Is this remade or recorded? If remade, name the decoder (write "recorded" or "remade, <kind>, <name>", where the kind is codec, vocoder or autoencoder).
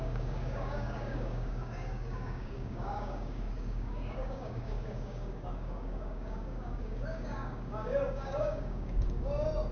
remade, codec, DAC